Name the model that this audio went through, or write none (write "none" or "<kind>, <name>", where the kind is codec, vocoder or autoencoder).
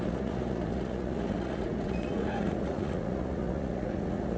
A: vocoder, Vocos